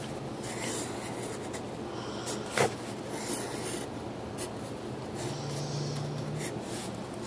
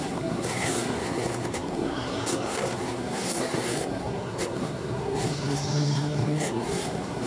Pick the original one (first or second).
first